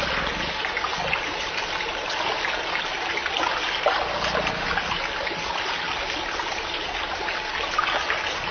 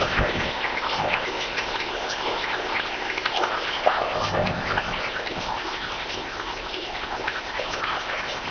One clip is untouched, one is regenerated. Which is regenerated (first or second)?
second